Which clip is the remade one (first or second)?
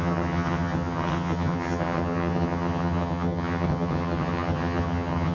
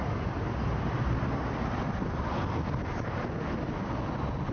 first